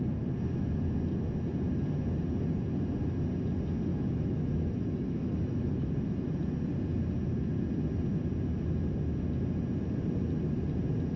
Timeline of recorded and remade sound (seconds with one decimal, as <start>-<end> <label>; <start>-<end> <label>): 0.0-3.9 recorded; 3.9-5.9 remade; 5.9-11.2 recorded